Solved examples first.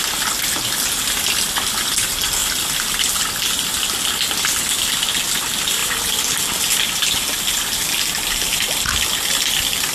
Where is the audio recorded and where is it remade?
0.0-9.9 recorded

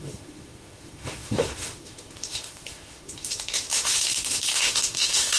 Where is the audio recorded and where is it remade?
0.0-5.4 remade

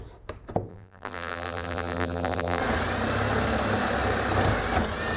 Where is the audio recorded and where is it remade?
0.0-0.7 recorded; 0.7-2.6 remade; 2.6-5.2 recorded

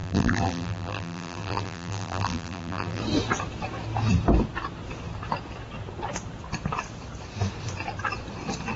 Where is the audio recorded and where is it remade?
0.0-3.0 remade; 3.0-8.8 recorded

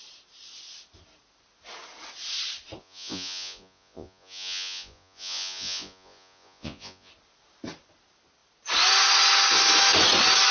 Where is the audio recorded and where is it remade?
0.0-2.8 recorded; 2.8-7.1 remade; 7.1-10.5 recorded

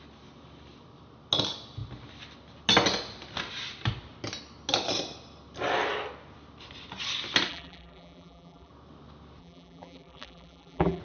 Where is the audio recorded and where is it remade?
0.0-7.5 recorded; 7.5-8.7 remade; 8.7-9.4 recorded; 9.4-11.0 remade

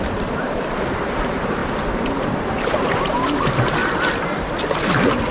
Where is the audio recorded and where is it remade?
0.0-3.8 remade; 3.8-5.3 recorded

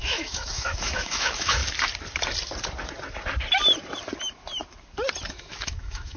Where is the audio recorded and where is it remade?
0.0-1.6 remade; 1.6-5.3 recorded; 5.3-6.2 remade